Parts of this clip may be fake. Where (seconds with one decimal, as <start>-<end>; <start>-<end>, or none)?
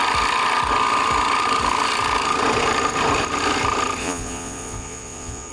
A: 4.0-5.5